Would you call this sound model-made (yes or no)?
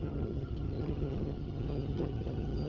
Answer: yes